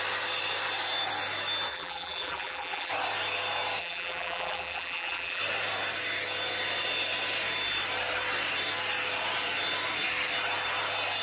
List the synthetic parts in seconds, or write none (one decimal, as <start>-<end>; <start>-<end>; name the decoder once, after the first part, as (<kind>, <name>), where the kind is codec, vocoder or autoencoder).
1.7-2.9 (vocoder, BigVGAN v2); 3.8-5.4